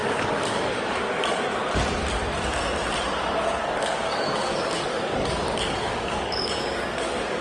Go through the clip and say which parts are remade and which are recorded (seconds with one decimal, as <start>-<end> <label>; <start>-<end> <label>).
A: 0.0-1.6 remade; 1.6-3.6 recorded; 3.6-7.4 remade